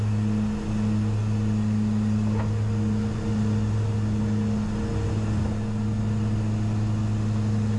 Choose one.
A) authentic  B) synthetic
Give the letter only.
A